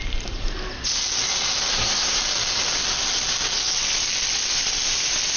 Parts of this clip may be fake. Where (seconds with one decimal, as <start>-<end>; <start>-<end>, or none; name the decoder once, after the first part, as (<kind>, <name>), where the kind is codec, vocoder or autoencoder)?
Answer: 1.7-2.2 (codec, SNAC)